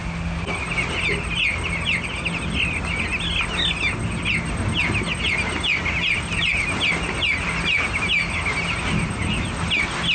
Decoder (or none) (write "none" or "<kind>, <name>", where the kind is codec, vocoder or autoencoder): none